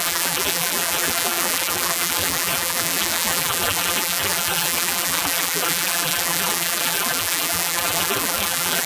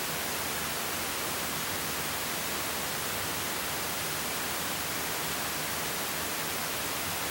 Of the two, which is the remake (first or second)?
first